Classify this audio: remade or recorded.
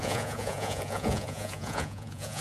remade